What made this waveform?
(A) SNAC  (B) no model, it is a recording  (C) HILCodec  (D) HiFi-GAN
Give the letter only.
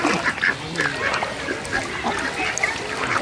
B